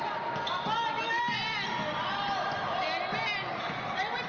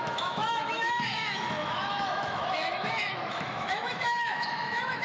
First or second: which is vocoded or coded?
second